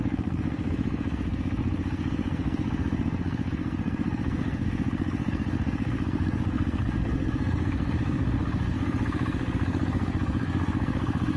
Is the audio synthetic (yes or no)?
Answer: yes